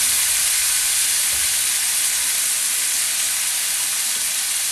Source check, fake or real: real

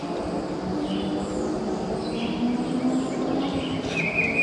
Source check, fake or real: real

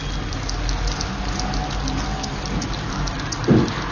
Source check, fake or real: real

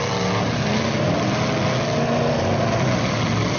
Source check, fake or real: real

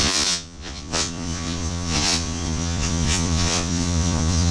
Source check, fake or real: fake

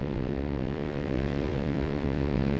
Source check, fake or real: fake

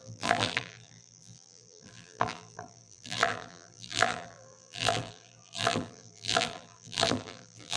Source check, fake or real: fake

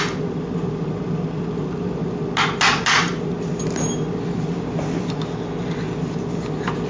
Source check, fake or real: real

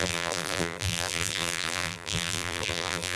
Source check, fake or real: fake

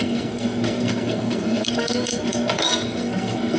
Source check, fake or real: fake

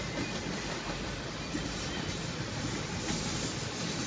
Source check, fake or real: real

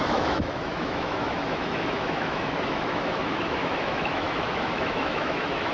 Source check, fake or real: fake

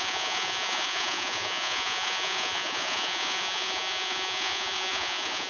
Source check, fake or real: fake